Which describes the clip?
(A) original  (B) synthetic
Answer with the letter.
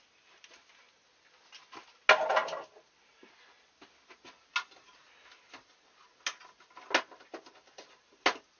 A